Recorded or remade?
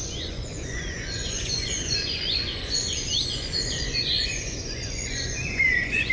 remade